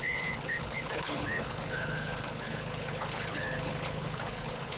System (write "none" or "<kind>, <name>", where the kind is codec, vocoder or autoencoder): codec, HILCodec